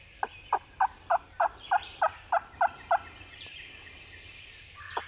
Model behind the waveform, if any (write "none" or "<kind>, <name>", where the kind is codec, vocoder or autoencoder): none